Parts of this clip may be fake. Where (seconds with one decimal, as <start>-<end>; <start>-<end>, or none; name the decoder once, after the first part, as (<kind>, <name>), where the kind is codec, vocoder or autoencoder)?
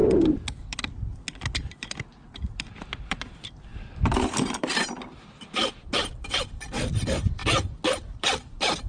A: 0.6-1.1 (vocoder, BigVGAN v2); 1.6-8.9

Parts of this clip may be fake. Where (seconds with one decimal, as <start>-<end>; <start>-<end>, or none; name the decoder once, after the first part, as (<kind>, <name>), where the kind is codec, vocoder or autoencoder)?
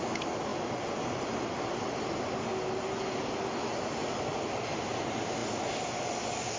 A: none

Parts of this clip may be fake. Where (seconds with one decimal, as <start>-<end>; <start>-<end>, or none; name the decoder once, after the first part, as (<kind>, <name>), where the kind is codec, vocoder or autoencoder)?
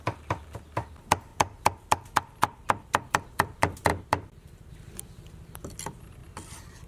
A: 0.0-6.9 (vocoder, BigVGAN v2)